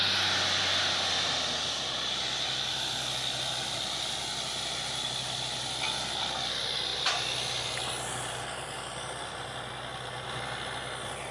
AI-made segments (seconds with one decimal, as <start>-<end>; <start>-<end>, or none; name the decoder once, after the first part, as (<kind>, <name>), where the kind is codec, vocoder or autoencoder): none